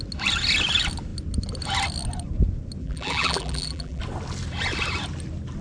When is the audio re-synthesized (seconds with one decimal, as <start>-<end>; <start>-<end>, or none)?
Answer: 2.8-4.0